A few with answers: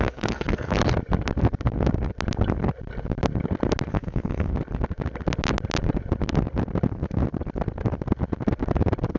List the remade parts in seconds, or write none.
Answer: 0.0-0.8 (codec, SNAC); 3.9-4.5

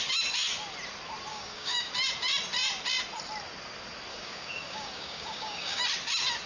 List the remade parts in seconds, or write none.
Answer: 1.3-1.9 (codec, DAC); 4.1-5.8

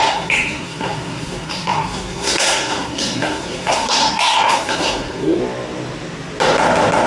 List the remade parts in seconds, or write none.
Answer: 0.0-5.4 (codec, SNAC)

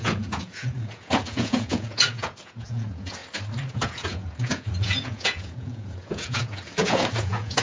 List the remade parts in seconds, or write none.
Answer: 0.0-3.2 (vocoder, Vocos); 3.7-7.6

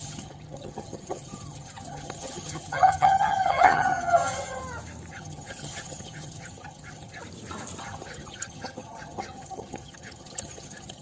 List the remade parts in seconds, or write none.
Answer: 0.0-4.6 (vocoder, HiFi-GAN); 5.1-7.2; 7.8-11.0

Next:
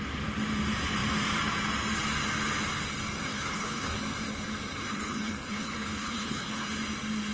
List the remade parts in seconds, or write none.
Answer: 3.3-4.0 (codec, HILCodec); 4.7-6.7

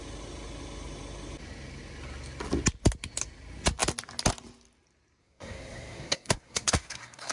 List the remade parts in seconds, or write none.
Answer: 5.2-7.3 (codec, SNAC)